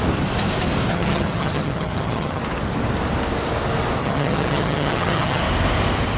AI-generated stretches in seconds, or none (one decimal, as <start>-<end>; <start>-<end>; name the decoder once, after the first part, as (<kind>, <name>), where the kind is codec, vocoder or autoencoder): 0.9-2.4 (vocoder, HiFi-GAN); 4.0-5.4